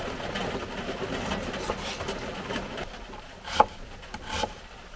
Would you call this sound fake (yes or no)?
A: no